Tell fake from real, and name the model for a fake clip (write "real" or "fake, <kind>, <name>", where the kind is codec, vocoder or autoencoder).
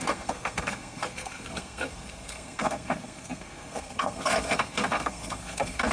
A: fake, codec, SNAC